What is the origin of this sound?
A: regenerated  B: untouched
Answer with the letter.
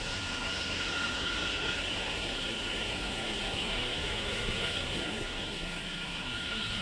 A